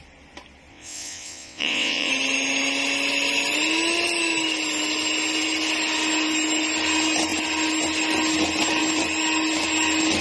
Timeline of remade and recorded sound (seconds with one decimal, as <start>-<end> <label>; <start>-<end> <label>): 0.0-0.7 recorded; 0.7-2.1 remade; 2.1-10.2 recorded